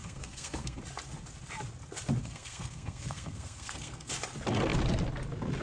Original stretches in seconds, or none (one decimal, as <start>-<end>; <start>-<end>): 0.8-2.2; 4.1-5.6